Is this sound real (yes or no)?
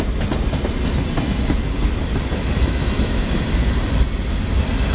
yes